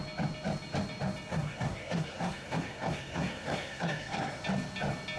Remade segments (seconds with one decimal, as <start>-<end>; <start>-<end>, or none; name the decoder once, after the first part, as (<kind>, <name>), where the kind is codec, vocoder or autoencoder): 1.3-4.4 (codec, SNAC)